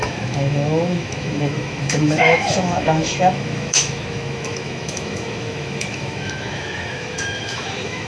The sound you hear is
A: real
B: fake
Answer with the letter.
B